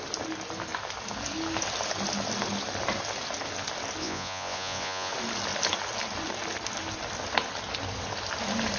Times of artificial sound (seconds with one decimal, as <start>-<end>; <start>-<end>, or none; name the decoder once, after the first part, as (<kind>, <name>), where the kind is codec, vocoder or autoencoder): 4.0-5.1 (vocoder, Vocos)